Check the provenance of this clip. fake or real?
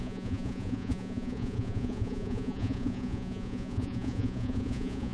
fake